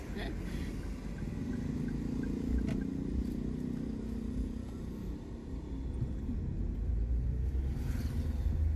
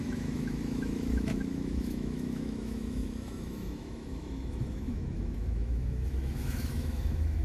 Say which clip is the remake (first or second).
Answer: second